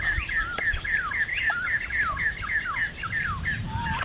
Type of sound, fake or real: real